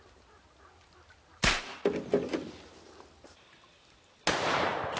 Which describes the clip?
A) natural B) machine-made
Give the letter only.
A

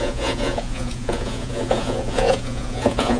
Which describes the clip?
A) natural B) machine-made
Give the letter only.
B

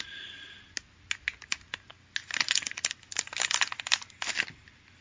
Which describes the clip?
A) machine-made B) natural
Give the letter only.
B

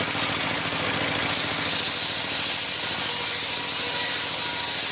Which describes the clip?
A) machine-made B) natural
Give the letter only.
B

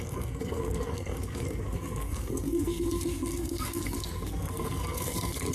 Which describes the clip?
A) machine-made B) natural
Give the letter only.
A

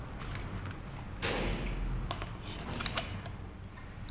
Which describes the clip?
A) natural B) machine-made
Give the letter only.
A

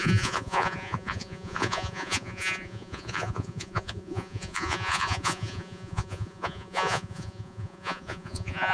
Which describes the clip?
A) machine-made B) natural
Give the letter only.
A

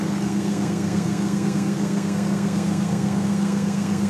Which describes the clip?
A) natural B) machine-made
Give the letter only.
B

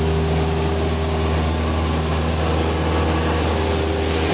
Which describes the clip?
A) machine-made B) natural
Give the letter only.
B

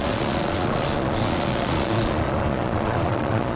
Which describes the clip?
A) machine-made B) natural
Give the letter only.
A